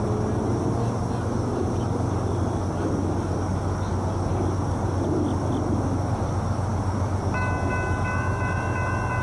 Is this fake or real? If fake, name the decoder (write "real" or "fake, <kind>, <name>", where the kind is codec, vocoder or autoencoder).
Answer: real